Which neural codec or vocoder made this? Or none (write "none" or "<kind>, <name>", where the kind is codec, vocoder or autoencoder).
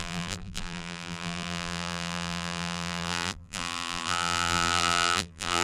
vocoder, BigVGAN v2